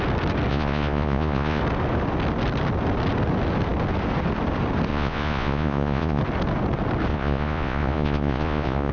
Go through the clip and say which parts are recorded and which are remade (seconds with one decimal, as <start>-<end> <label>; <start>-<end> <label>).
0.0-0.5 recorded; 0.5-1.6 remade; 1.6-4.9 recorded; 4.9-6.2 remade; 6.2-7.1 recorded; 7.1-8.9 remade